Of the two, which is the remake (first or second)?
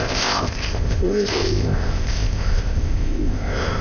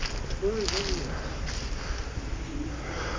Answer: first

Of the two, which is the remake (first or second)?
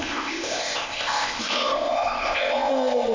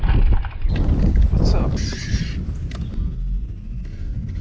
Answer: first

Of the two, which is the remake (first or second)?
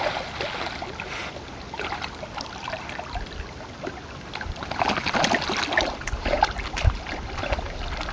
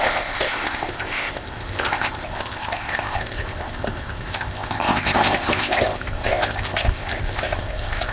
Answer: second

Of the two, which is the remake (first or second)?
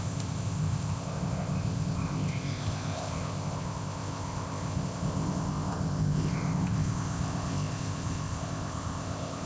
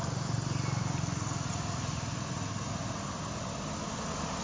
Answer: first